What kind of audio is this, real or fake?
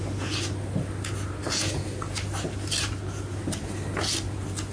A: real